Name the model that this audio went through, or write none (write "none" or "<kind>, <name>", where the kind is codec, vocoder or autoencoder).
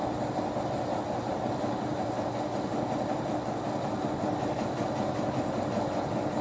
none